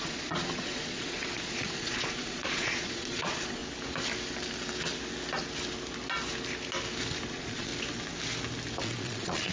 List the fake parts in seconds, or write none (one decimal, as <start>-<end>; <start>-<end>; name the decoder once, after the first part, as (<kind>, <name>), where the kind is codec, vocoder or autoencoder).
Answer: 0.0-3.6 (vocoder, Vocos); 7.3-7.7; 8.8-9.5